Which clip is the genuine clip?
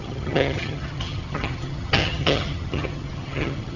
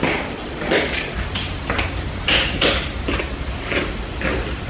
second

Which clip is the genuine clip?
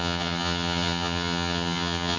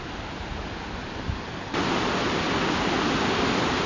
second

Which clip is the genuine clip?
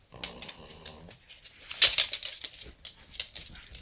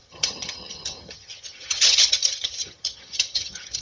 first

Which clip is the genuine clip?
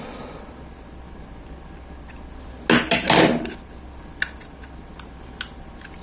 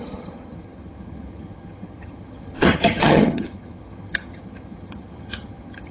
first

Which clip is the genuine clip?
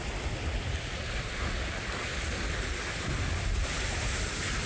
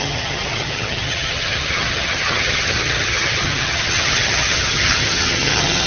first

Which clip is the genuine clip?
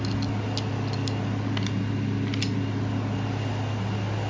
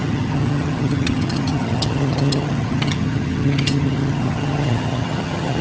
first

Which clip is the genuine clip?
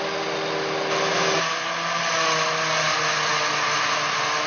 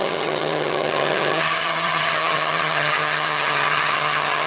first